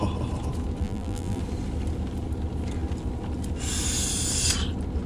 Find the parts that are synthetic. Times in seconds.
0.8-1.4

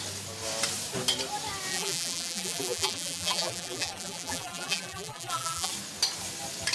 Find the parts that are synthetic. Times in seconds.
1.7-5.7

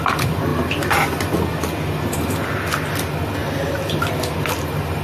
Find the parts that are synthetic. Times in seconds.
3.4-4.0

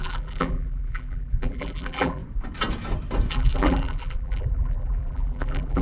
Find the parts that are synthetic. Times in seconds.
0.0-2.2; 3.3-5.8

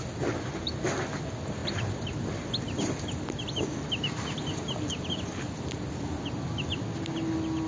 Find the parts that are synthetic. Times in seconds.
none

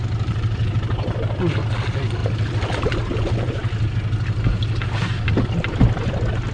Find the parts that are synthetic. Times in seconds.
0.0-1.3; 2.2-2.8

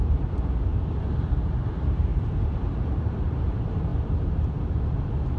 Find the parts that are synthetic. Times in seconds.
0.0-3.9

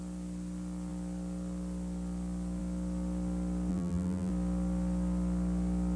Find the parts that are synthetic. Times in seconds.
3.7-4.3